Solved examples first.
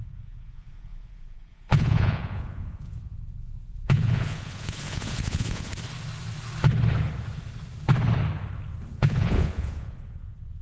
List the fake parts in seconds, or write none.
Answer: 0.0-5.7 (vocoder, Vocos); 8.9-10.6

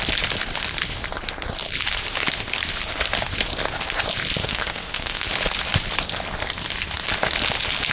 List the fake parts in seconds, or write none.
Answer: 4.4-5.3 (codec, SNAC)

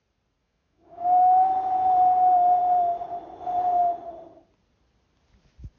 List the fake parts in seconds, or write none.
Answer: 0.4-1.1 (autoencoder, DAC-VAE)

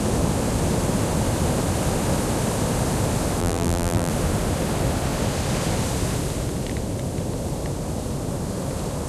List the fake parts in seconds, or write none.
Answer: 3.4-4.1 (vocoder, BigVGAN v2)

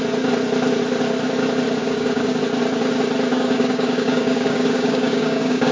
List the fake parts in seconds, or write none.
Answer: 1.8-2.4 (codec, DAC); 3.3-5.7

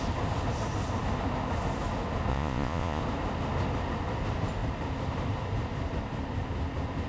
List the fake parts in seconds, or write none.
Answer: 2.3-3.0 (vocoder, Vocos)

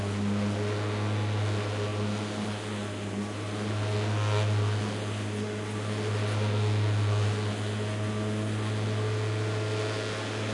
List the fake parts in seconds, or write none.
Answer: none